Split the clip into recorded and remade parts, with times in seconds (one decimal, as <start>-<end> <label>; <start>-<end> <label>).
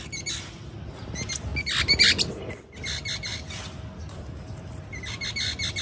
0.0-5.8 recorded